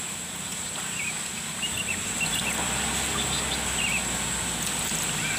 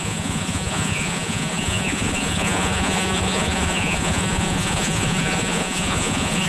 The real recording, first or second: first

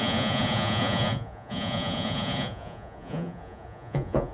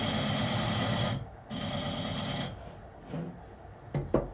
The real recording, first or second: second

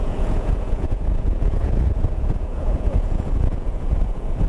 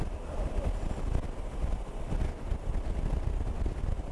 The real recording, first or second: second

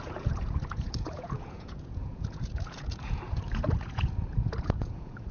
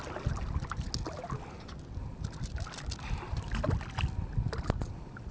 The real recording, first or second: second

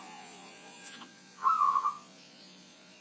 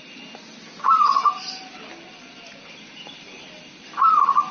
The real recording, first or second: second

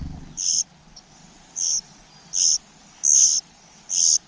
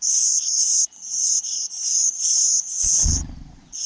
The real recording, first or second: first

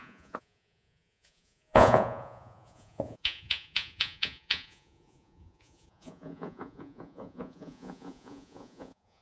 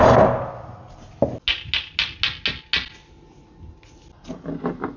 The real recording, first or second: second